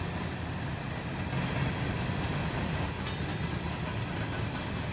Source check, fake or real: real